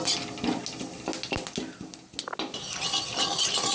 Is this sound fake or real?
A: real